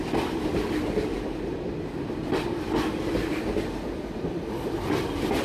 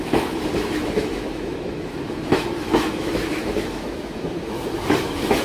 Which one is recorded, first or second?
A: first